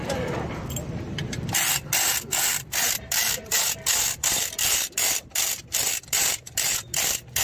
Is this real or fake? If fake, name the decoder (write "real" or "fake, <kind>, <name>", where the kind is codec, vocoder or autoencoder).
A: fake, vocoder, BigVGAN v2